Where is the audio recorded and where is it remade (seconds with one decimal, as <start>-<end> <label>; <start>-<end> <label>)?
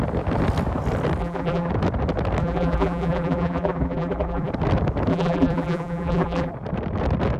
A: 0.0-1.2 recorded; 1.2-1.7 remade; 1.7-2.4 recorded; 2.4-4.5 remade; 4.5-5.1 recorded; 5.1-6.5 remade; 6.5-7.4 recorded